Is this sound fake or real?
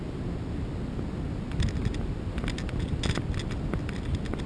real